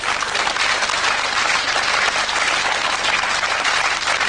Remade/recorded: recorded